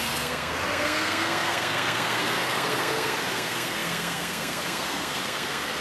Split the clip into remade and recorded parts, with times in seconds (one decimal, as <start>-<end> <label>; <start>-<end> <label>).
0.0-5.8 remade